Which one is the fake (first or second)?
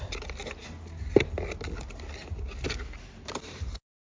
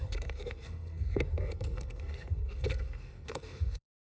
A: second